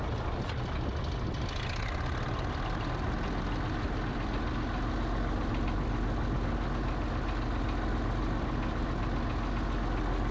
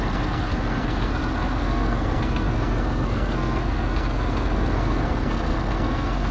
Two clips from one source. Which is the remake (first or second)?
second